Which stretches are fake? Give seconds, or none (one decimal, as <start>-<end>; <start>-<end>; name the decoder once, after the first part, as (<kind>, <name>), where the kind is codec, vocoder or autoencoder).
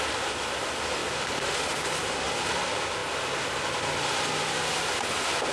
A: none